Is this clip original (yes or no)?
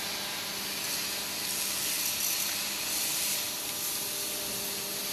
yes